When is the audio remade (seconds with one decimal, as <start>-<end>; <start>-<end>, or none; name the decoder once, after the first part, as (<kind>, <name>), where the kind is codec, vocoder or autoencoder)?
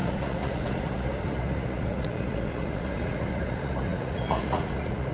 0.0-5.1 (vocoder, Vocos)